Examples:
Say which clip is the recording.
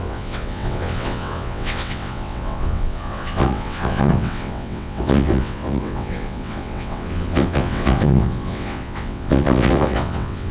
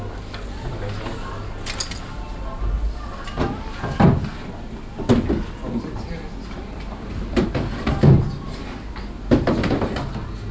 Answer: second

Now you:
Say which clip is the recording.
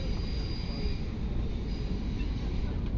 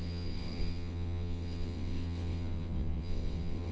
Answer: first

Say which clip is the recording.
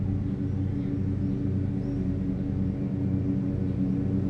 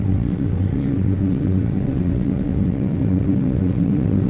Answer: first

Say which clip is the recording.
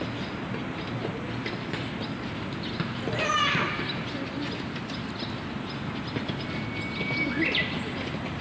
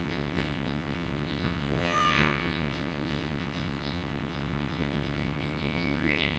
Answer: first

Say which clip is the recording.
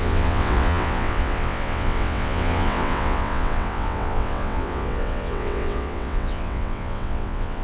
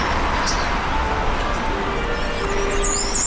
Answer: second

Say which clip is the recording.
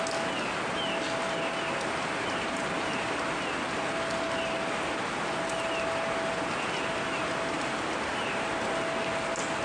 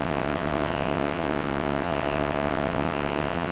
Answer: first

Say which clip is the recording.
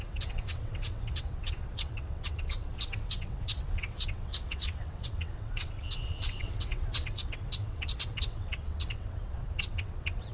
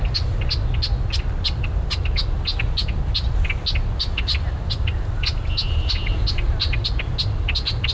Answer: second